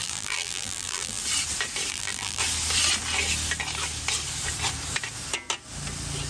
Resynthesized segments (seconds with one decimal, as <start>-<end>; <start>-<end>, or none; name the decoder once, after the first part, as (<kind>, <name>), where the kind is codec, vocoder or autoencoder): 0.0-1.2 (vocoder, BigVGAN v2); 1.9-2.4